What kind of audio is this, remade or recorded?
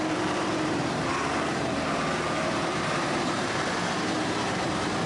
remade